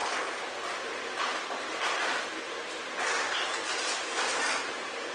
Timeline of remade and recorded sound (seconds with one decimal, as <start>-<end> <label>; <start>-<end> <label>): 0.0-0.8 recorded; 0.8-1.3 remade; 1.3-4.4 recorded; 4.4-5.1 remade